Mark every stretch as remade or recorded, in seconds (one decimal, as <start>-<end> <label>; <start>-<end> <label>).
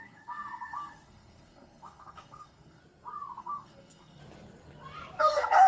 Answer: 0.0-2.8 remade; 2.8-3.4 recorded; 3.4-4.2 remade; 4.2-5.2 recorded; 5.2-5.7 remade